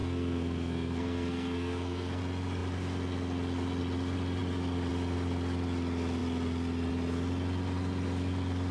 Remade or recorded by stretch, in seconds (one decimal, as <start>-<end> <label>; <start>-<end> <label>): 0.0-2.2 remade; 2.2-8.7 recorded